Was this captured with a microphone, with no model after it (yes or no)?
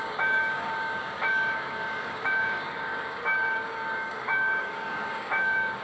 no